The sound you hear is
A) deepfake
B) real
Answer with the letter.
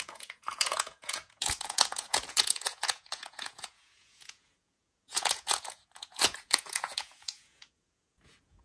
A